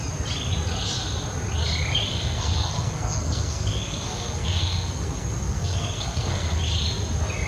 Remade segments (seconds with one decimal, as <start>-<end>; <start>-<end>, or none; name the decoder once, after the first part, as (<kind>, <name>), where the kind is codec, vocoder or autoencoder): 2.1-6.6 (codec, SNAC)